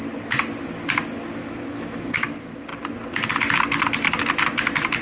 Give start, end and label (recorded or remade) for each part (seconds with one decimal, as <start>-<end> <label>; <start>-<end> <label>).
0.0-1.4 recorded; 1.4-2.1 remade; 2.1-5.0 recorded